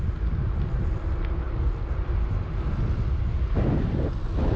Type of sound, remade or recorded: recorded